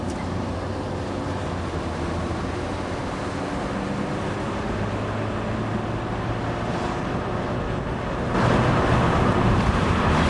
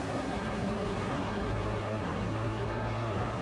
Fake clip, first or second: second